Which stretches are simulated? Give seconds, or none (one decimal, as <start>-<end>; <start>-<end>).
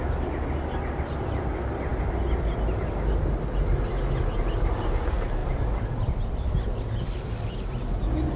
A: 5.4-7.3